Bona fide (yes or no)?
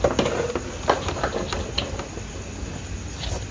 yes